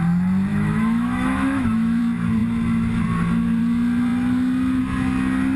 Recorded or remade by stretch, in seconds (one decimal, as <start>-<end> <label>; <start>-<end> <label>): 0.0-0.5 recorded; 0.5-2.0 remade; 2.0-5.6 recorded